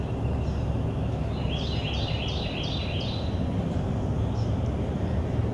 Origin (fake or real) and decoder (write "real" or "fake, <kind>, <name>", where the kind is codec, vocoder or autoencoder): real